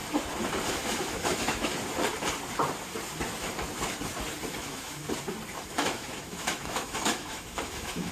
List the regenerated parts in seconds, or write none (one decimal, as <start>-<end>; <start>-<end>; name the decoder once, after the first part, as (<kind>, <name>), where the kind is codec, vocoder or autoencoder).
0.7-1.7 (autoencoder, DAC-VAE); 4.6-5.0; 5.6-8.1